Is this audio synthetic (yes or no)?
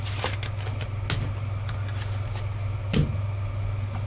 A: no